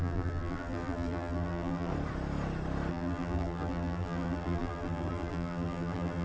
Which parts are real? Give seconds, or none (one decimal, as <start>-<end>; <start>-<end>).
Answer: 1.9-2.9